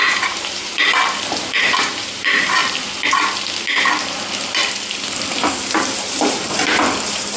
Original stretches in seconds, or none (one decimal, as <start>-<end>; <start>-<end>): 2.6-5.5